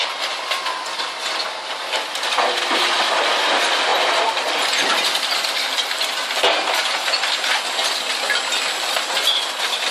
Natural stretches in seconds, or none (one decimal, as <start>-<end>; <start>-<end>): 0.0-9.9